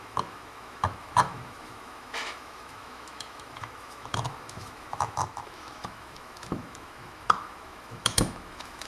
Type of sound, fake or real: fake